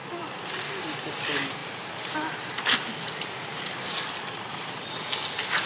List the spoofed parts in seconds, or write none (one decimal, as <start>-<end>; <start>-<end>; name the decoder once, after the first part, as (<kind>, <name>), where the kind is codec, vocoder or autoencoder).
0.0-0.6 (vocoder, BigVGAN v2); 1.6-4.9